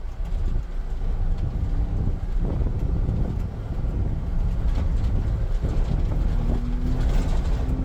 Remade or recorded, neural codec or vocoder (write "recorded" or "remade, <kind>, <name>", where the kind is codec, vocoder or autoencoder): recorded